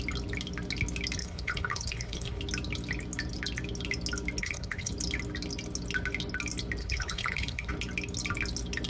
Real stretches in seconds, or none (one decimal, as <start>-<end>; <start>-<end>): 0.0-1.2; 2.4-4.4; 4.9-6.8; 7.7-8.9